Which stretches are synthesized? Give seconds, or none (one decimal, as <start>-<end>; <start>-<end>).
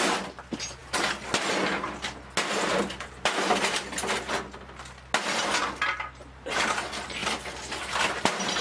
none